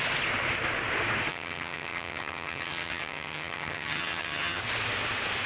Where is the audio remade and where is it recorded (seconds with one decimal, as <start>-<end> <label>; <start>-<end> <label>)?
0.0-1.3 recorded; 1.3-4.6 remade; 4.6-5.5 recorded